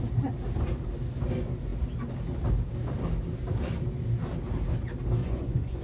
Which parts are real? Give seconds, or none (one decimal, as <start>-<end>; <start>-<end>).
0.0-5.2